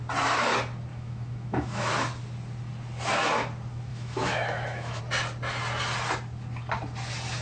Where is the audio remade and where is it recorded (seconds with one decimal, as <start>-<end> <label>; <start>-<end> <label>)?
0.0-0.9 recorded; 0.9-1.9 remade; 1.9-3.9 recorded; 3.9-5.0 remade; 5.0-7.4 recorded